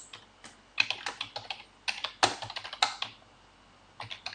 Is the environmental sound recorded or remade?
recorded